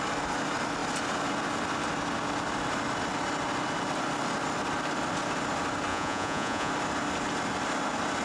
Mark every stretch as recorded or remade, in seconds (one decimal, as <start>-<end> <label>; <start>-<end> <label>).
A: 0.0-5.9 recorded; 5.9-6.7 remade; 6.7-8.2 recorded